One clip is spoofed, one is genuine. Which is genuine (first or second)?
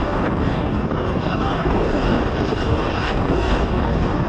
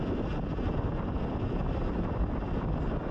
second